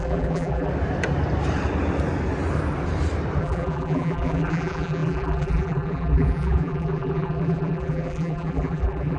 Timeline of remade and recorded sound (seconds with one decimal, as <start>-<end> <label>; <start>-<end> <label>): 0.0-0.7 remade; 0.7-3.4 recorded; 3.4-9.2 remade